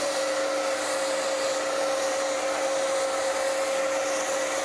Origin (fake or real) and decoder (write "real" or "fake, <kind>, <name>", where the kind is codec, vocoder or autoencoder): real